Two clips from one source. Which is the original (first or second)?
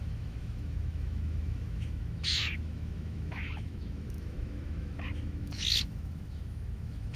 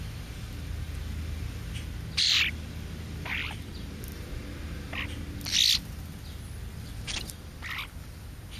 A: second